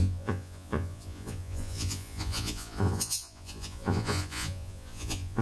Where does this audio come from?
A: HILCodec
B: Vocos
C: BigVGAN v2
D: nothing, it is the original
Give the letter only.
B